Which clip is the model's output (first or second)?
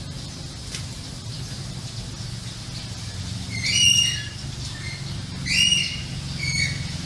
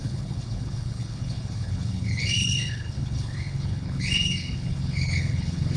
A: second